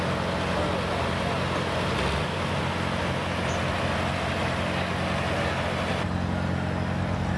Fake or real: real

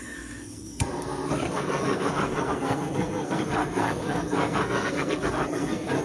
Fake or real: fake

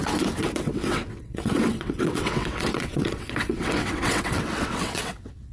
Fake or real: fake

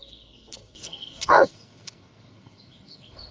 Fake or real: fake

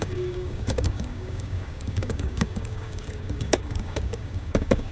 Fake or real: fake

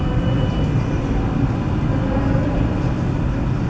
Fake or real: real